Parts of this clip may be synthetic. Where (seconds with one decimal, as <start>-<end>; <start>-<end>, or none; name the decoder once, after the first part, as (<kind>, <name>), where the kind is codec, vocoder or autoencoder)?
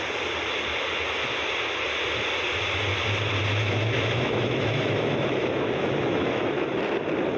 3.5-6.7 (autoencoder, DAC-VAE)